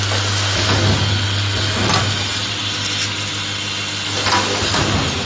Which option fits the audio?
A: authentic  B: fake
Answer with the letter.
A